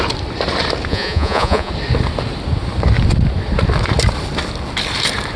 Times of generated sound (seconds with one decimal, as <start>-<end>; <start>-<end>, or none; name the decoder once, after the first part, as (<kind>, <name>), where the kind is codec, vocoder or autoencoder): 0.9-1.7 (vocoder, Vocos)